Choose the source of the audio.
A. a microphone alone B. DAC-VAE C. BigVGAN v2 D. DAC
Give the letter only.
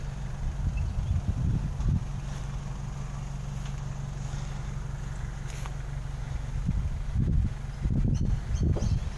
A